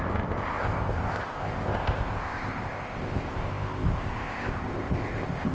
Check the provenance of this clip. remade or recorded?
remade